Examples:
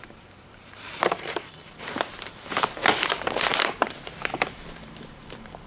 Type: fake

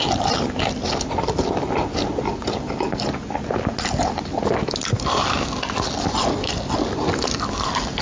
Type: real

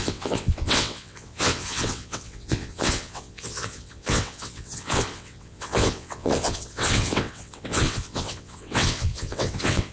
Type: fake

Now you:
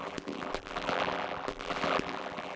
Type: fake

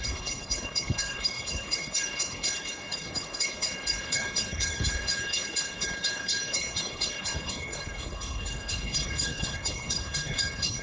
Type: fake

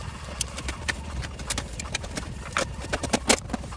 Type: real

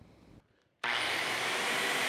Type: fake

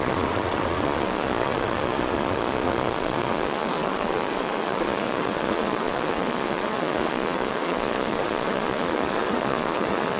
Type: fake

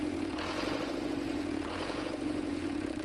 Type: fake